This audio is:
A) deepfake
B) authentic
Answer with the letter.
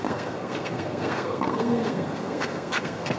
A